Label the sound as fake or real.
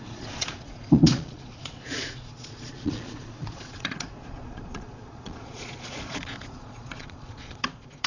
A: fake